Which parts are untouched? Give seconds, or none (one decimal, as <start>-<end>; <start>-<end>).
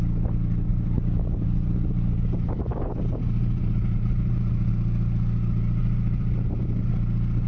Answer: 0.0-0.7; 4.7-5.8; 6.9-7.5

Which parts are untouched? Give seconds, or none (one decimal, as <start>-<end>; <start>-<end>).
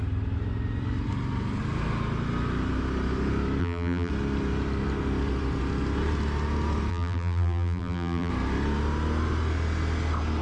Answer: 0.0-3.6; 4.1-6.9; 8.3-10.4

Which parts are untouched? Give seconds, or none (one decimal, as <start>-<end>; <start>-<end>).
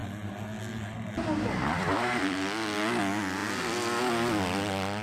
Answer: 0.0-5.0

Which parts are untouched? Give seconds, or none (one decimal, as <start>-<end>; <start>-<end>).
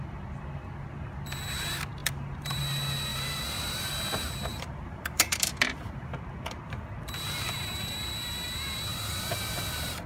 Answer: 0.0-2.0; 2.6-3.1; 3.9-4.5; 6.2-8.9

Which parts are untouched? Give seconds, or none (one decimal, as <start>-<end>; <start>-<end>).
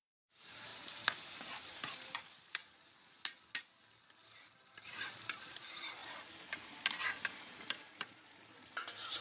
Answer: 2.6-4.7; 6.0-7.2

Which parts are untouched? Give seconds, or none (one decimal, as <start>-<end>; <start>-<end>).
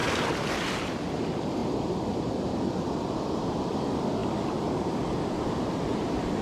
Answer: 0.0-0.8; 4.2-4.9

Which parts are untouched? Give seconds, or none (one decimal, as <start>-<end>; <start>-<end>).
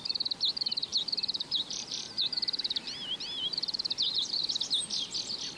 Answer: 0.0-0.9; 4.3-5.6